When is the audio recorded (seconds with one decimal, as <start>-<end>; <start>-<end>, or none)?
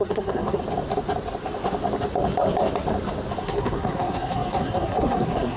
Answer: 0.6-3.4